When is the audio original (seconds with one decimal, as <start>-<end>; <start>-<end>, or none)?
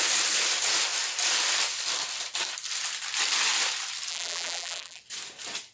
0.0-4.1; 5.0-5.7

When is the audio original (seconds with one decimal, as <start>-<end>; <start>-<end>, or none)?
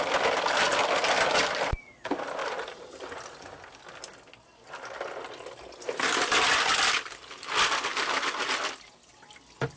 0.0-2.4; 3.1-7.9; 8.7-9.8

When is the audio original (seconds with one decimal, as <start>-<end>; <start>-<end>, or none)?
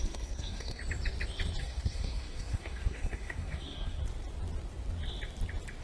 0.8-1.6; 4.0-5.8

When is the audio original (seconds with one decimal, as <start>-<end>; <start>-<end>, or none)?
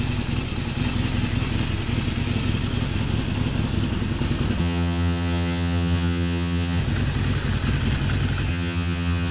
0.0-4.6; 6.8-8.5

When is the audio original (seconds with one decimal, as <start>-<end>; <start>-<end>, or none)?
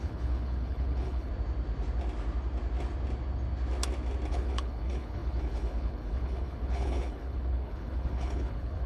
1.3-4.3